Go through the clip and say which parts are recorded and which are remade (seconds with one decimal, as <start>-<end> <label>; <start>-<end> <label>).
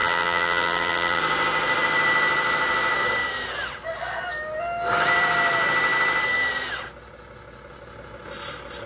0.0-1.2 remade; 1.2-8.9 recorded